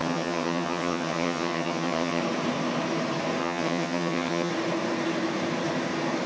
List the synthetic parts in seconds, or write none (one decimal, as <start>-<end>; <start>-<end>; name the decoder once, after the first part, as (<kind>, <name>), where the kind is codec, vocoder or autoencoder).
0.0-2.2 (vocoder, HiFi-GAN); 3.4-4.5